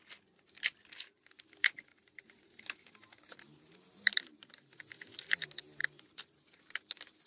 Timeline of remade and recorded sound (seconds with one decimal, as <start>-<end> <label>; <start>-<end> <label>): 0.0-1.9 recorded; 1.9-4.8 remade; 4.8-5.8 recorded; 5.8-6.6 remade; 6.6-7.3 recorded